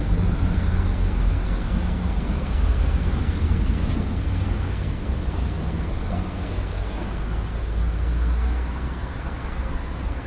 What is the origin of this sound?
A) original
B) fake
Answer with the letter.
B